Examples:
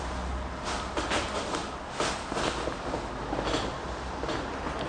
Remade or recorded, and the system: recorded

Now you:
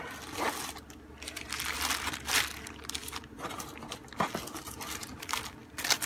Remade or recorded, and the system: recorded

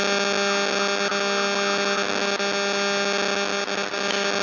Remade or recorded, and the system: recorded